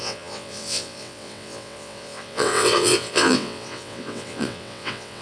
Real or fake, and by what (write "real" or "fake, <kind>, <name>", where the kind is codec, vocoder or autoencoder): fake, vocoder, WaveNeXt